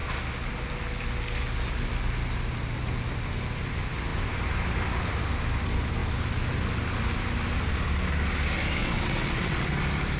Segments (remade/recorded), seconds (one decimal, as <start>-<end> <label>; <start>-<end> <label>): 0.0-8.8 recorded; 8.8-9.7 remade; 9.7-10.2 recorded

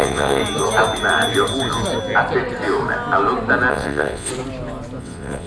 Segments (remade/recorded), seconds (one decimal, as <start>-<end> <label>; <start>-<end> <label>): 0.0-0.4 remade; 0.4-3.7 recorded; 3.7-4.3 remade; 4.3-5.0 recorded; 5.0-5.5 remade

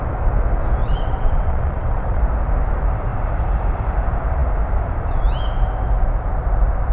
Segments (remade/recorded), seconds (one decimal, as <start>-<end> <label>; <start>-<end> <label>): 0.0-0.8 recorded; 0.8-2.2 remade; 2.2-6.9 recorded